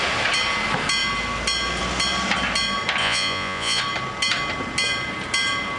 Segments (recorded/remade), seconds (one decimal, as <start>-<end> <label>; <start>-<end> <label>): 0.0-3.0 recorded; 3.0-3.8 remade; 3.8-5.8 recorded